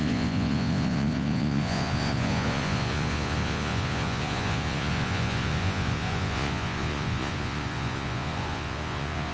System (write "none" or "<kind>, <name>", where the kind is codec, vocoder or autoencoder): vocoder, Vocos